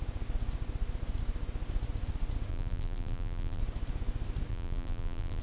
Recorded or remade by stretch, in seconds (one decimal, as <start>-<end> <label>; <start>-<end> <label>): 0.0-2.5 recorded; 2.5-3.6 remade; 3.6-4.5 recorded; 4.5-5.4 remade